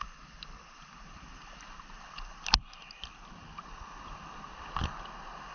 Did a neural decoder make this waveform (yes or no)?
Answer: no